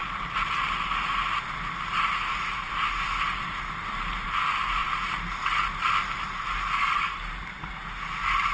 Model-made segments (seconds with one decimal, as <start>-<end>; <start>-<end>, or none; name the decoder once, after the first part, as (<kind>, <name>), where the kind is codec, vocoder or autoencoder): none

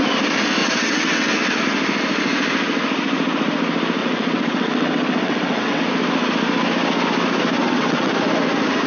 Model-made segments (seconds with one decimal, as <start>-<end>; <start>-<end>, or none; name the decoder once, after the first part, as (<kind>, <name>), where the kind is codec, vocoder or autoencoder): 0.6-1.6 (vocoder, WaveNeXt); 4.0-5.8; 7.6-8.1

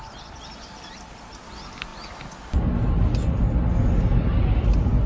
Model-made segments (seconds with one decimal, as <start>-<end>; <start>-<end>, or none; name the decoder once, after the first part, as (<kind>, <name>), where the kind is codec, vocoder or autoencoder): none